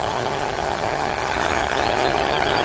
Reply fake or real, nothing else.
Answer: fake